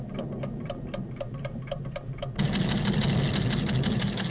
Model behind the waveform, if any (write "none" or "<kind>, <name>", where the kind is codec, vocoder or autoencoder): none